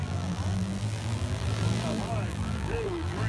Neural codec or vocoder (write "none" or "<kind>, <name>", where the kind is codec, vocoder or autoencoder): vocoder, BigVGAN v2